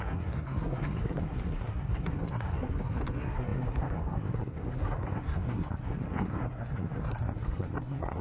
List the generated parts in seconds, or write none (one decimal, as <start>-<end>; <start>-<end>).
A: 0.0-8.2

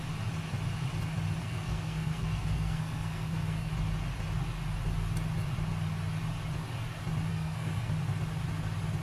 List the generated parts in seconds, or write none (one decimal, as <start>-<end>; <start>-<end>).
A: 1.4-3.7; 7.3-7.9

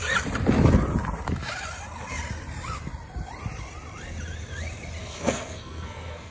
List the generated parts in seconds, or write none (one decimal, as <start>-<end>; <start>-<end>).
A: 5.0-6.3